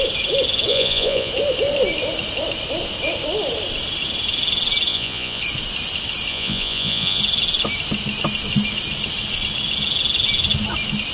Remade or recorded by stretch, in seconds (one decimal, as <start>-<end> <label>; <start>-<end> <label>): 0.0-0.7 recorded; 0.7-1.3 remade; 1.3-4.9 recorded; 4.9-5.4 remade; 5.4-6.3 recorded; 6.3-7.2 remade; 7.2-11.1 recorded